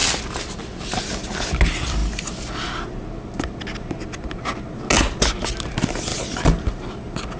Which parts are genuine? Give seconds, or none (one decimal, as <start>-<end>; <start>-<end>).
0.0-7.4